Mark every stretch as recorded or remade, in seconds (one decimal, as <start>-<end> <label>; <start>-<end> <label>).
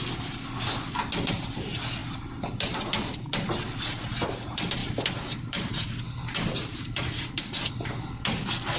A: 0.0-2.0 recorded; 2.0-2.8 remade; 2.8-4.8 recorded; 4.8-7.7 remade; 7.7-8.8 recorded